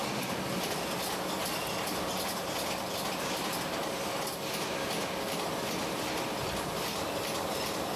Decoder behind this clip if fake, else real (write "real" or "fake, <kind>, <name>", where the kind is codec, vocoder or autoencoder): real